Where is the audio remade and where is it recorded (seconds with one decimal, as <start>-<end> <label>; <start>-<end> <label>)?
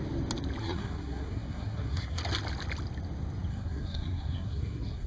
0.0-0.6 recorded; 0.6-2.2 remade; 2.2-3.5 recorded; 3.5-5.1 remade